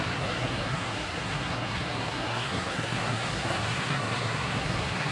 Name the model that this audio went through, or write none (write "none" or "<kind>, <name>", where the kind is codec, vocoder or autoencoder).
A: codec, SNAC